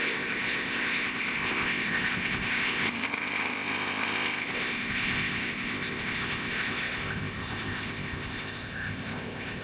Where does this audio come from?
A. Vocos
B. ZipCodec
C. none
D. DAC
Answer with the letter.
B